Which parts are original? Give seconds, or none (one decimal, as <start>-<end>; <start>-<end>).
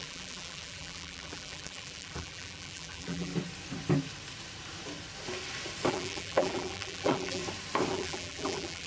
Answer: 3.3-5.9; 7.4-7.9